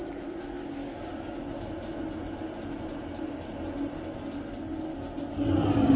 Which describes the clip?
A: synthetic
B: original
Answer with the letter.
B